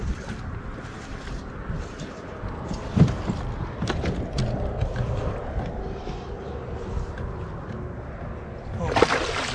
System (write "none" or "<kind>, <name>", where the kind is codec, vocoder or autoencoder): none